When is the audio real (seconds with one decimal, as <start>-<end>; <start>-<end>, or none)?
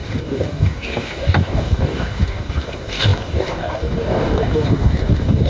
none